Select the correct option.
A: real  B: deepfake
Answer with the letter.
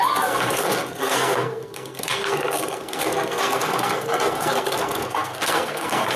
B